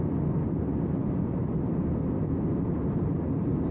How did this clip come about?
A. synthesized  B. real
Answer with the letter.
B